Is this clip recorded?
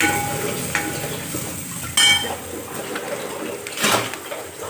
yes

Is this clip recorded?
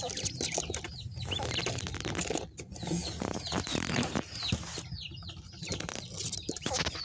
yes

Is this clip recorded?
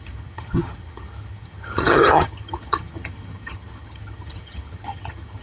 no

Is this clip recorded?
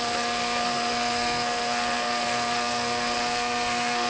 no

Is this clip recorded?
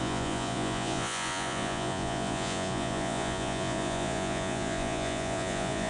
no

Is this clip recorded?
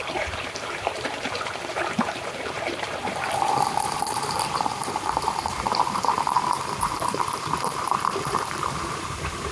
no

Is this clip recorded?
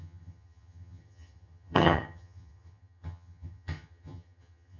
no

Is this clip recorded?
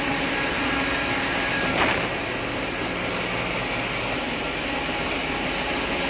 yes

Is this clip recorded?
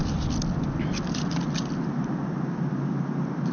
yes